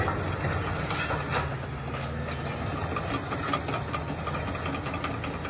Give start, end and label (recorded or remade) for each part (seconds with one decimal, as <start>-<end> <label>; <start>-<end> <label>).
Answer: 0.0-5.5 recorded